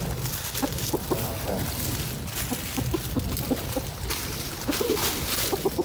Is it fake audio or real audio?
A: real